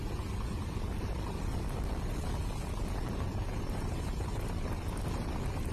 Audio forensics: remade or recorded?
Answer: recorded